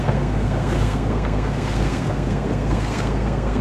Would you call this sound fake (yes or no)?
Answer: yes